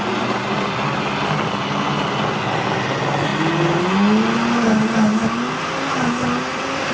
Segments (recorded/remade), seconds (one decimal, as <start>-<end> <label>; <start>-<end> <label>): 0.0-6.9 recorded